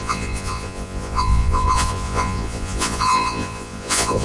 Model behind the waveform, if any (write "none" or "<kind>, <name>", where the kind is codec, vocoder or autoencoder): vocoder, Vocos